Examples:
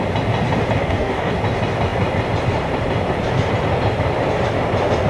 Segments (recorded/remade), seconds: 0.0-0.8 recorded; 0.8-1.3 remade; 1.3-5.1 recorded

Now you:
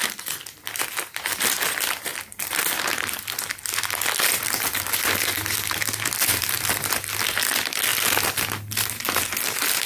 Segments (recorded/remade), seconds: 0.0-9.9 recorded

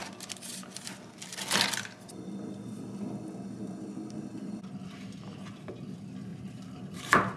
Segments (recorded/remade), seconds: 0.0-6.3 recorded; 6.3-7.0 remade; 7.0-7.4 recorded

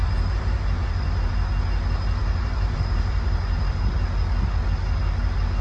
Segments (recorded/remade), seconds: 0.0-1.3 remade; 1.3-2.2 recorded; 2.2-3.8 remade; 3.8-5.6 recorded

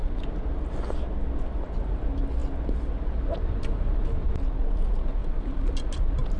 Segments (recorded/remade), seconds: 0.0-6.4 recorded

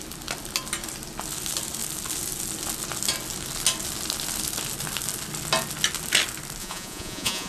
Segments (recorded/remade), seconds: 0.0-6.6 recorded; 6.6-7.5 remade